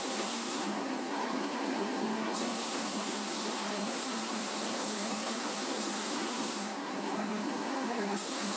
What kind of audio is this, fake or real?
fake